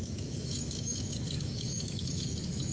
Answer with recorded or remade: remade